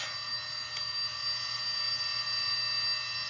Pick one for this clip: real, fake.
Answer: real